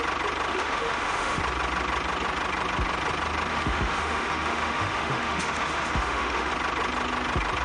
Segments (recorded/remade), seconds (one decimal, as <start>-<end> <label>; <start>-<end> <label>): 0.0-0.5 recorded; 0.5-1.4 remade; 1.4-3.5 recorded; 3.5-6.5 remade; 6.5-7.6 recorded